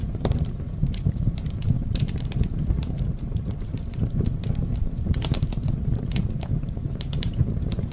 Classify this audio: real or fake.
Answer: fake